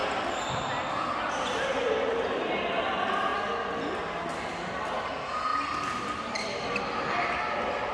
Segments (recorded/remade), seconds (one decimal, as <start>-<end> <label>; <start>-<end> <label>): 0.0-7.9 recorded